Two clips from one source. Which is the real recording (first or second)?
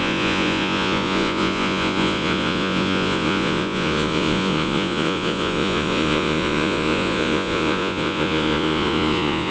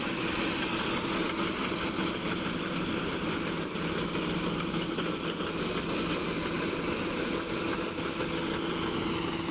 second